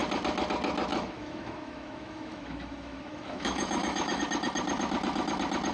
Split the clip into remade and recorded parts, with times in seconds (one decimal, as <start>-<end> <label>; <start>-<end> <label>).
0.0-0.9 recorded; 0.9-4.2 remade; 4.2-5.7 recorded